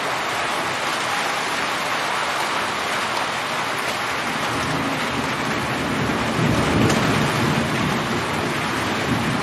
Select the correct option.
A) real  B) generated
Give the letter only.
A